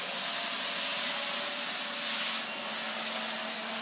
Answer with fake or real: real